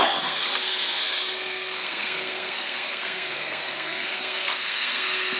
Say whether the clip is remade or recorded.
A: remade